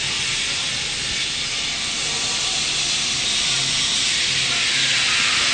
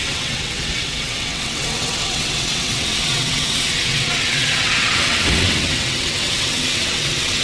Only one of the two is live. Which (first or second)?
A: first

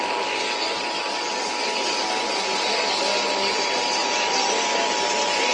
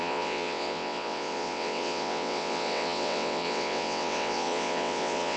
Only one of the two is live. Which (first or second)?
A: first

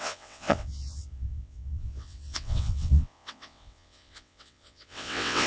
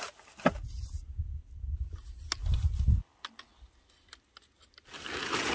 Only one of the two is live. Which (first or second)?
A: second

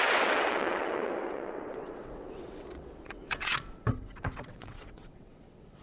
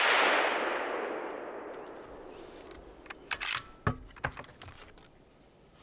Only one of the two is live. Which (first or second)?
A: second